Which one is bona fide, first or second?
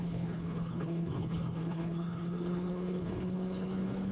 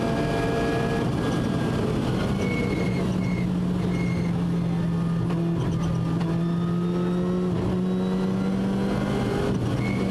second